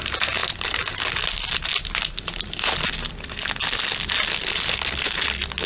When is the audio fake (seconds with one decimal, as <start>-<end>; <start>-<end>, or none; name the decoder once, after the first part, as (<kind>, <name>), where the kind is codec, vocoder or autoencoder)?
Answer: none

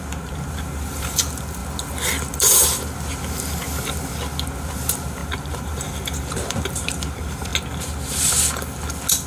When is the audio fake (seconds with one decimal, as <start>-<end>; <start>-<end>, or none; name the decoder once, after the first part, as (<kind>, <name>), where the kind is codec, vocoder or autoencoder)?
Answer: 0.0-1.6 (vocoder, BigVGAN v2); 4.7-7.5